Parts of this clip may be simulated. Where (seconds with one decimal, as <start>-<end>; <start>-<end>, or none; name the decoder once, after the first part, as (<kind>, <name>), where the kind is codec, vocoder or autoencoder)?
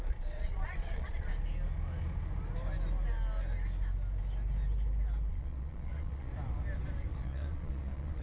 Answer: 0.0-1.3 (vocoder, Vocos); 5.3-6.3; 7.1-8.2